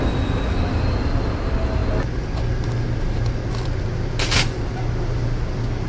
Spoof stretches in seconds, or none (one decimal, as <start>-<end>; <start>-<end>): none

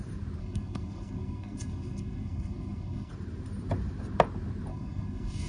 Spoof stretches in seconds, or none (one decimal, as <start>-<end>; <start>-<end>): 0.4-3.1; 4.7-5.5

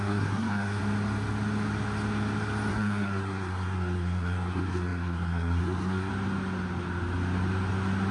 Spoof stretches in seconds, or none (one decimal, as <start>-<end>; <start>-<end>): 0.0-0.8; 2.7-6.1